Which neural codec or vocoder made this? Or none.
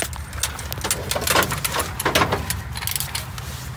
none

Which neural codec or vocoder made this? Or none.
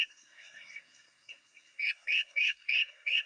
codec, SNAC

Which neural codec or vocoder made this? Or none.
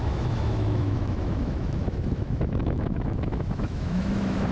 autoencoder, DAC-VAE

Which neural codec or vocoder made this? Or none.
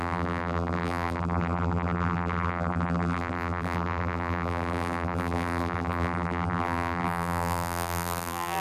vocoder, BigVGAN v2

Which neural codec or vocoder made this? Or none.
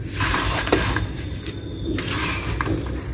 none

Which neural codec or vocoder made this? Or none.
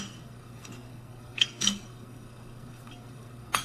codec, SNAC